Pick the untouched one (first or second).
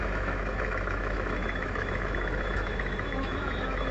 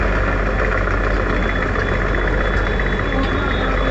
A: second